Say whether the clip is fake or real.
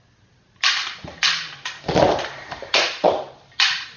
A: real